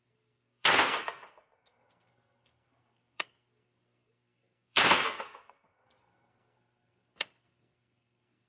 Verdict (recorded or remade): remade